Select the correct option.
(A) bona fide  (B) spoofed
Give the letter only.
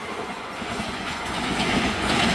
B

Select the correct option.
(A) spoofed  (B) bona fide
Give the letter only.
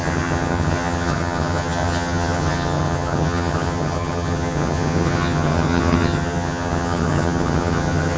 A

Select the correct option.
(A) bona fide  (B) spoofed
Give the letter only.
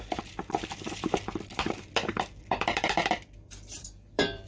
B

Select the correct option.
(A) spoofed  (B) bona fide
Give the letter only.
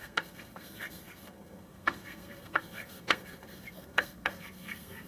A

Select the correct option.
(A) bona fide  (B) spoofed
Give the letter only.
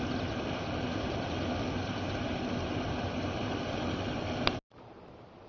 A